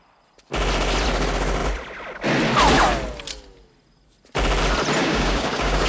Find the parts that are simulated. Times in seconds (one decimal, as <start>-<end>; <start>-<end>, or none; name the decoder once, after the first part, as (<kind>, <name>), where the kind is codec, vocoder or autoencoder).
5.0-5.9 (codec, DAC)